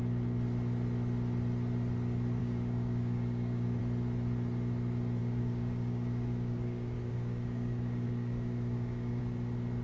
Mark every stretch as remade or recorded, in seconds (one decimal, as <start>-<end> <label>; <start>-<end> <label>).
0.0-2.4 recorded; 2.4-3.8 remade; 3.8-5.2 recorded; 5.2-9.2 remade; 9.2-9.8 recorded

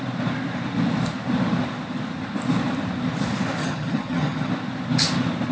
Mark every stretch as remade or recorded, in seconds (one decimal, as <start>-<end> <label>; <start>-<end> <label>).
0.0-3.6 recorded; 3.6-4.5 remade; 4.5-5.5 recorded

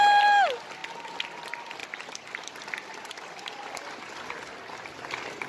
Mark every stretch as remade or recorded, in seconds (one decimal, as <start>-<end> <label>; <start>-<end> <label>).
0.0-5.5 recorded

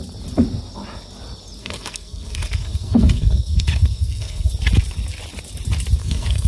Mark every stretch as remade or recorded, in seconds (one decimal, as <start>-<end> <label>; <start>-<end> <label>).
0.0-1.6 recorded; 1.6-4.5 remade; 4.5-6.0 recorded; 6.0-6.5 remade

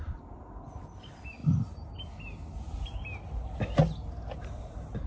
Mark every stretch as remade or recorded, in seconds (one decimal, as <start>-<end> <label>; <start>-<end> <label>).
0.0-5.1 recorded